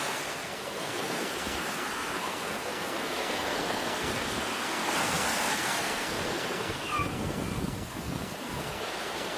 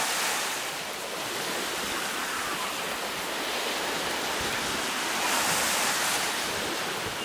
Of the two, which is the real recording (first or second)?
second